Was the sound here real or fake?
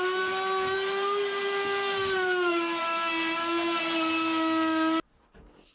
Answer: real